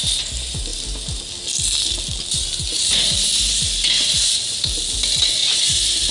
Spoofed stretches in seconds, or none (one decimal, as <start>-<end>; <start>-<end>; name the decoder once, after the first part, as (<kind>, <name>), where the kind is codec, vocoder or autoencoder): none